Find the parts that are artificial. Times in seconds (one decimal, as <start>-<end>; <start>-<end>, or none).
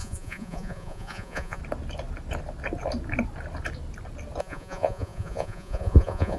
0.0-1.6; 4.4-6.4